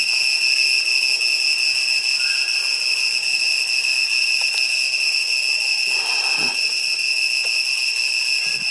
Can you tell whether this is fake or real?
real